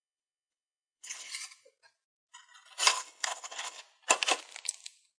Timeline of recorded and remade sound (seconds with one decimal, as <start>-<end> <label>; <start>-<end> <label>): 0.0-1.3 remade; 1.3-2.9 recorded; 2.9-3.8 remade; 3.8-5.2 recorded